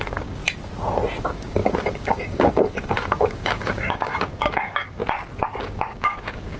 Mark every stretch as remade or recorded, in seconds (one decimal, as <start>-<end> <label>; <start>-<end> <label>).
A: 0.0-0.4 remade; 0.4-1.2 recorded; 1.2-5.0 remade; 5.0-5.6 recorded; 5.6-6.6 remade